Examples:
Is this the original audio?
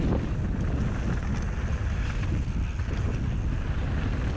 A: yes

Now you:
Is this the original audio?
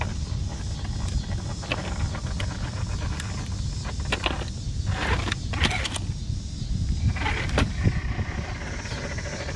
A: yes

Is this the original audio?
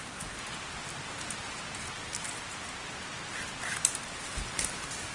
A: yes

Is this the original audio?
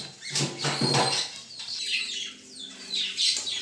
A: yes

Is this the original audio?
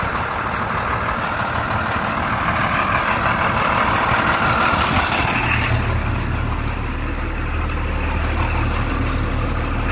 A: yes